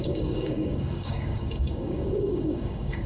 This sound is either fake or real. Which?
fake